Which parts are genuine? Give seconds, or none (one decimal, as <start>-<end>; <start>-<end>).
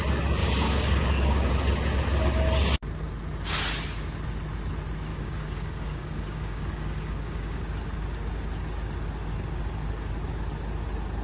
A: 0.0-0.4; 1.5-5.1; 7.6-11.2